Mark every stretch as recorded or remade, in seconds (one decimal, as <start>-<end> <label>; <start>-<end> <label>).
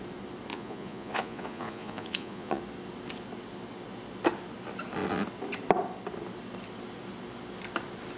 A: 0.0-0.5 recorded; 0.5-2.6 remade; 2.6-8.2 recorded